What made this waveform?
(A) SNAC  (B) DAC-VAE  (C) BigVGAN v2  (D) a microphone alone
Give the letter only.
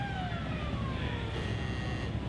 D